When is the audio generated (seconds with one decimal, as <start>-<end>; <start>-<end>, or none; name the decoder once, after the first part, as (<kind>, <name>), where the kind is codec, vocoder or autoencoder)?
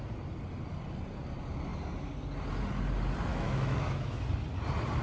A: 3.3-4.2 (autoencoder, DAC-VAE)